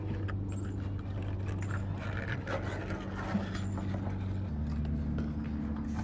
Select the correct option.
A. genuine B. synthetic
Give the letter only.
A